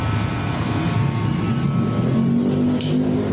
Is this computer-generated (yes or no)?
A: no